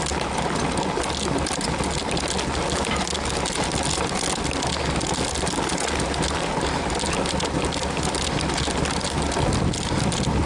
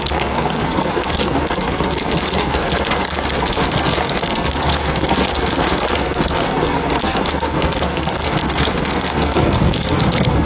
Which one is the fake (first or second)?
second